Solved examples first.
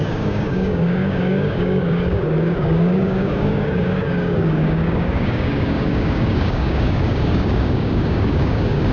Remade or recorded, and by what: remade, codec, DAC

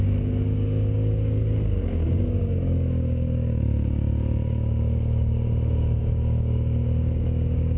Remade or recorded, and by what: remade, codec, DAC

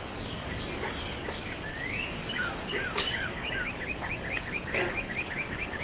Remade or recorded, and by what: remade, codec, DAC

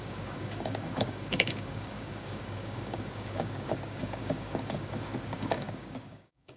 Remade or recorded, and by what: remade, codec, DAC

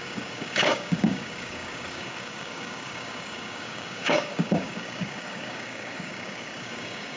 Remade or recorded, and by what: remade, codec, DAC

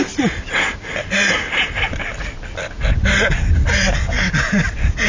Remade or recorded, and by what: recorded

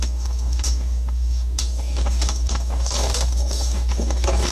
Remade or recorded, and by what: remade, codec, DAC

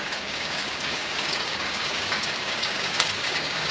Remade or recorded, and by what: remade, codec, DAC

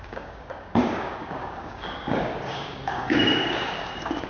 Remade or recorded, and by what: remade, codec, DAC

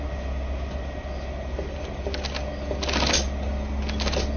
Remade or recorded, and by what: recorded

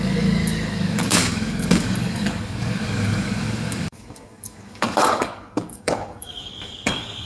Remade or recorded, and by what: remade, codec, DAC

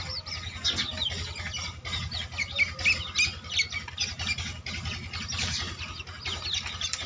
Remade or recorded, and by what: recorded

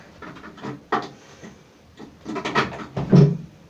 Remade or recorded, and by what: recorded